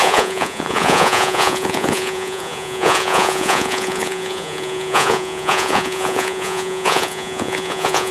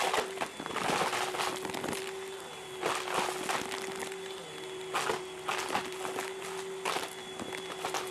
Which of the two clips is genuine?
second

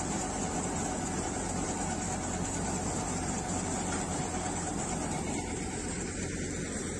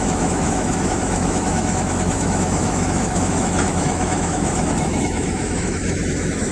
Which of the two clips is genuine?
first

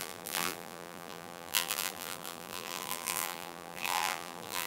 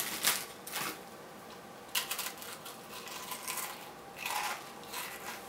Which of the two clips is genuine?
second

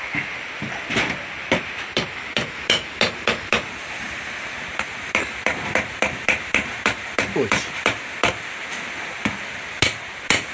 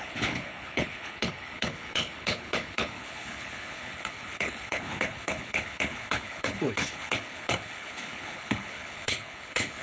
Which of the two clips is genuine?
first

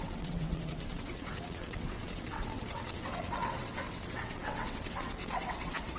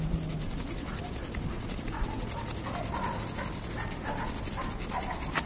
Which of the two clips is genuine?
second